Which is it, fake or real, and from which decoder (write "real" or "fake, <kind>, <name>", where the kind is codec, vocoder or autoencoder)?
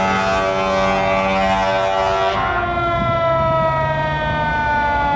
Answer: real